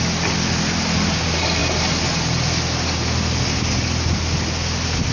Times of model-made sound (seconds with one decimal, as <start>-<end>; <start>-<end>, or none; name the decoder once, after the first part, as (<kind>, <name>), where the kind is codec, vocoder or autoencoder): none